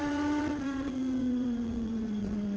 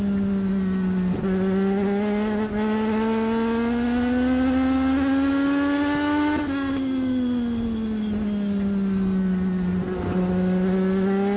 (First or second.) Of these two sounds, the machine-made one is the first